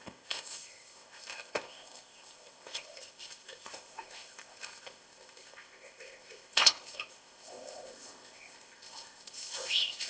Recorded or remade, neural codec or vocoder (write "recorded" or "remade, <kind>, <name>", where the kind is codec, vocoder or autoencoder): remade, codec, ZipCodec